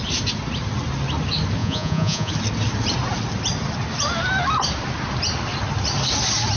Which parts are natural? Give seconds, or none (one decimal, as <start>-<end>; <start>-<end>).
0.0-1.6; 2.3-6.6